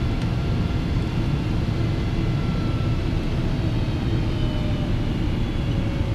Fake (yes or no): no